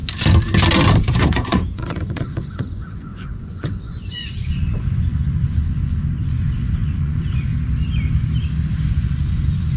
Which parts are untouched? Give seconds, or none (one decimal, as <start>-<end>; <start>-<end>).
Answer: 0.0-1.2; 7.5-8.9

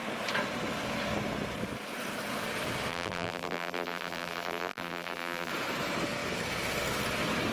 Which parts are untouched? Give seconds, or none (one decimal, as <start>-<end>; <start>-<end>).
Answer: 0.0-2.9; 5.5-7.5